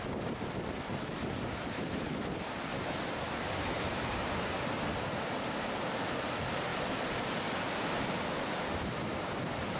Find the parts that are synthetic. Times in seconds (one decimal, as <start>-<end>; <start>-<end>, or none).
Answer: none